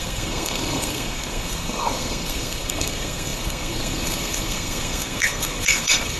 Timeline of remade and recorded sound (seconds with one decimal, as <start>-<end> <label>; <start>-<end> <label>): 0.0-6.2 remade